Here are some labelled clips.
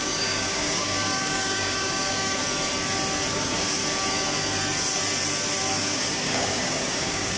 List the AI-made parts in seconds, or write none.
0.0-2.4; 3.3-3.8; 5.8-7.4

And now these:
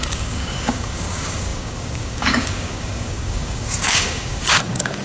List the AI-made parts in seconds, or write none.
0.0-5.0

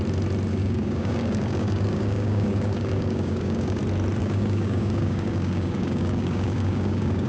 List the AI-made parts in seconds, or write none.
0.5-3.8; 4.2-7.3

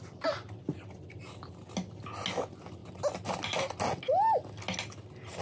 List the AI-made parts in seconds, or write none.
none